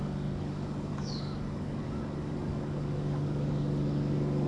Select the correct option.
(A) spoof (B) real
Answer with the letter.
A